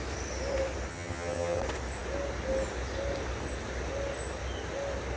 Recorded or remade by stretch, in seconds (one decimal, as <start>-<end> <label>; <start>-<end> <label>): 0.0-0.9 recorded; 0.9-1.6 remade; 1.6-5.2 recorded